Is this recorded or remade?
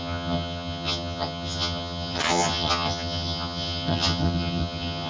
remade